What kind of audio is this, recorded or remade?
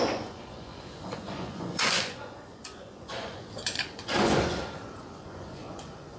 remade